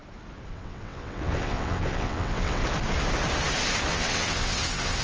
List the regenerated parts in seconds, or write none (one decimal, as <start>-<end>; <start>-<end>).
0.5-2.6; 3.9-5.0